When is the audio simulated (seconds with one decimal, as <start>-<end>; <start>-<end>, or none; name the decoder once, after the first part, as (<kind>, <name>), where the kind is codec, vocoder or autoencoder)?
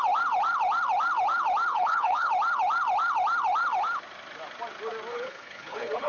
1.7-2.3 (codec, HILCodec); 5.1-6.1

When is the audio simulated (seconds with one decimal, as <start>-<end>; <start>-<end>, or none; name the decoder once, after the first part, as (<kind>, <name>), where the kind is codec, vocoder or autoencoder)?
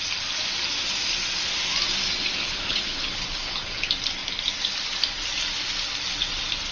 2.3-3.7 (codec, HILCodec)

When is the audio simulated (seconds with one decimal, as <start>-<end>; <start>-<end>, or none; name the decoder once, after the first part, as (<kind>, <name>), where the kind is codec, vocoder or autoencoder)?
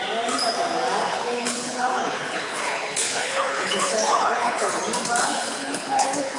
1.0-4.8 (codec, HILCodec); 5.2-6.4